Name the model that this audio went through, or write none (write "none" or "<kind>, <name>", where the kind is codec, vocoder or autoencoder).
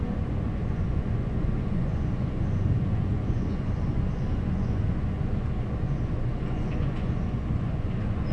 vocoder, Vocos